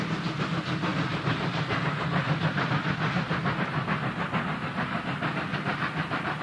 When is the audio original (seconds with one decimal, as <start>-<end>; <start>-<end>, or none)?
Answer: 0.0-6.4